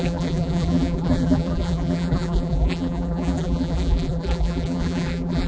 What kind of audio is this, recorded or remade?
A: remade